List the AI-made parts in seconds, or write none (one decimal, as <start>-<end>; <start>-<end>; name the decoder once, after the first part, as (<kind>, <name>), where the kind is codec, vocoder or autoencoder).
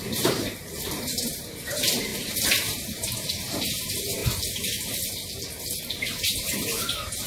0.0-4.2 (vocoder, BigVGAN v2); 5.8-7.3